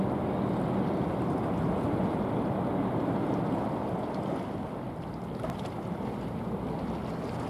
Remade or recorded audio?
recorded